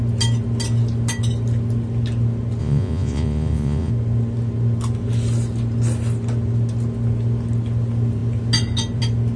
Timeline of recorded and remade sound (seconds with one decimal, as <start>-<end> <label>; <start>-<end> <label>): 0.0-2.6 recorded; 2.6-3.9 remade; 3.9-9.4 recorded